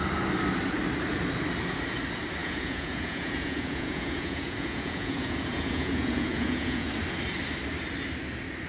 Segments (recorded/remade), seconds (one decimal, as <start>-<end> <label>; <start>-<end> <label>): 0.0-2.4 recorded; 2.4-6.9 remade; 6.9-8.7 recorded